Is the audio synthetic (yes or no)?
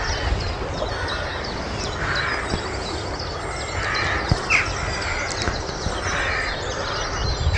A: no